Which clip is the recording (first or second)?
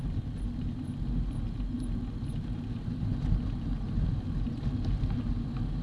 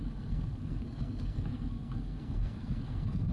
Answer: first